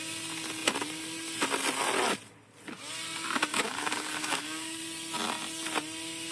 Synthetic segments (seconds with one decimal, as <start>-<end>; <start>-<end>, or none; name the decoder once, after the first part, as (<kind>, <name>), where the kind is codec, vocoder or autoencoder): 3.5-4.8 (codec, DAC)